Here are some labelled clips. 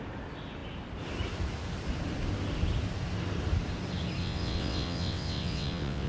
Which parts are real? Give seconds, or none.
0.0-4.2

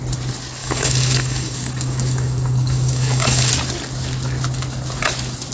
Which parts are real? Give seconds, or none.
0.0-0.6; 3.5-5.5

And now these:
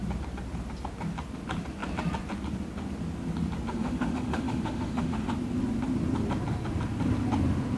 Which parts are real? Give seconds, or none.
0.0-3.7; 5.3-7.8

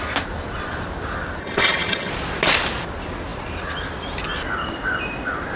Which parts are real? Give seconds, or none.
0.0-1.4; 2.1-5.6

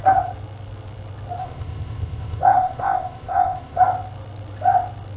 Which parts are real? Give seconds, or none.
0.0-1.4; 3.8-5.2